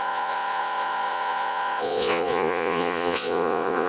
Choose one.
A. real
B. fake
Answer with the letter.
B